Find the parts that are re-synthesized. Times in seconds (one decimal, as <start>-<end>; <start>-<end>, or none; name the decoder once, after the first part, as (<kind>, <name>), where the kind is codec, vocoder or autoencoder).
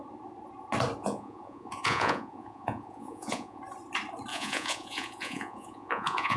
1.0-3.6 (vocoder, Vocos); 4.3-6.4